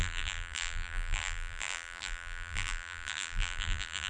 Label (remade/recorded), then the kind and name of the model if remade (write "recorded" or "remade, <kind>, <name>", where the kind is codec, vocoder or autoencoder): remade, vocoder, BigVGAN v2